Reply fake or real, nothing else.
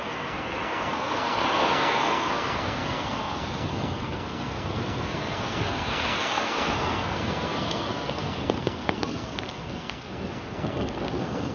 fake